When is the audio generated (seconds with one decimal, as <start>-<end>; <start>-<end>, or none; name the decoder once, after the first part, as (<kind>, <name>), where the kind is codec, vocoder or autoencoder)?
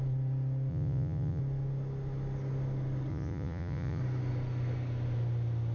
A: 0.7-1.4 (vocoder, Vocos); 3.1-4.0